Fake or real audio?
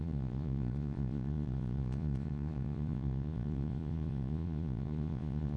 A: fake